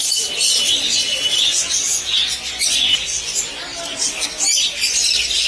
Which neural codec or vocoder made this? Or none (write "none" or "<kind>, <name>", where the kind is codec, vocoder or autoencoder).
none